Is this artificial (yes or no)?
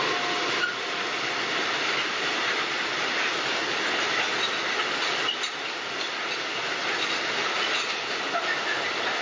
no